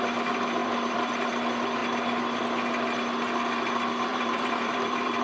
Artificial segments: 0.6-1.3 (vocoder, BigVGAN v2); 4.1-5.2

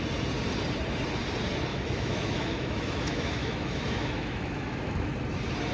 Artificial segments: 1.7-5.1 (autoencoder, DAC-VAE)

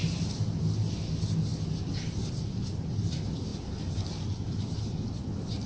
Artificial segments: none

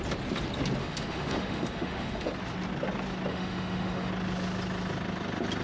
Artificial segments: 0.8-2.3 (autoencoder, DAC-VAE); 3.3-4.1